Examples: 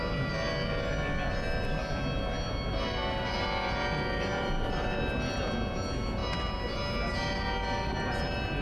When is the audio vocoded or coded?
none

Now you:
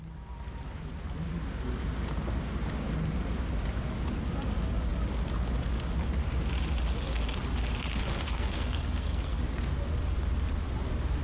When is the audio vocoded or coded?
8.1-9.4

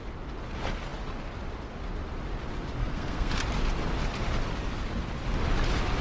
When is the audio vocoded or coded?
2.8-3.3

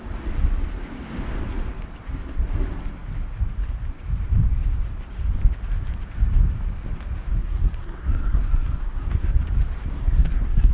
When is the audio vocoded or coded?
7.4-9.4; 9.8-10.7

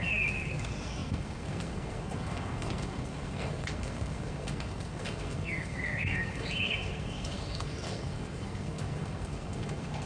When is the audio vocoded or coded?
0.0-10.1

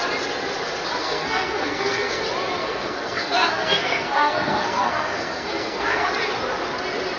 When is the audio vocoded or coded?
1.0-2.2; 2.6-6.1

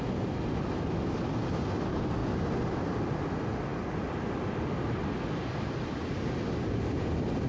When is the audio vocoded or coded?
none